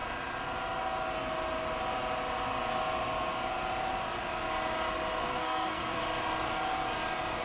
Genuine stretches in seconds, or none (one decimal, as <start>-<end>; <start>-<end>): 0.0-5.2; 6.0-7.4